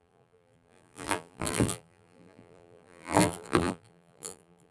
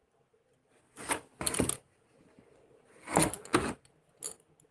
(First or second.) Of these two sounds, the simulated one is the first